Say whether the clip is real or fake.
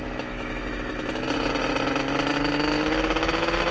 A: real